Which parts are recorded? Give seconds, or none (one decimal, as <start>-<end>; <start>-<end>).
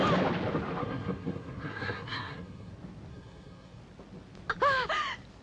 0.0-0.8; 2.7-3.1; 3.8-5.4